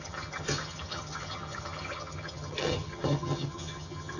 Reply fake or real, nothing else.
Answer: fake